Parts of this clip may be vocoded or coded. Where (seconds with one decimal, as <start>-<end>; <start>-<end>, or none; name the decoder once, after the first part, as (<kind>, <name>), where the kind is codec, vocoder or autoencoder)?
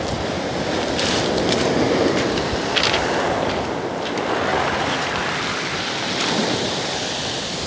4.5-5.1 (vocoder, Vocos)